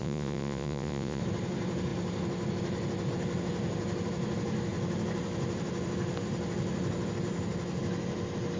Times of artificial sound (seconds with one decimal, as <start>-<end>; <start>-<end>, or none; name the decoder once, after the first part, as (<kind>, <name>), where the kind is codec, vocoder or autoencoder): 0.0-1.2 (vocoder, Vocos)